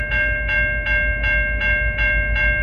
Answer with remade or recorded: recorded